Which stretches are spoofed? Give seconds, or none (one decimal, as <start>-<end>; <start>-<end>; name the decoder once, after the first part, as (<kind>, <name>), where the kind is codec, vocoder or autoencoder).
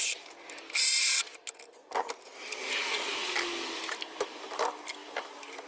none